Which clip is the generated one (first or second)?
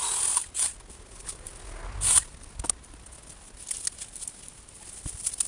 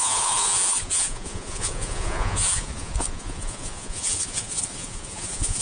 second